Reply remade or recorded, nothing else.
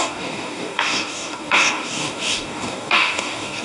remade